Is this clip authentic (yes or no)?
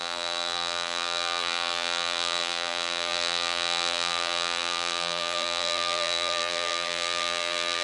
no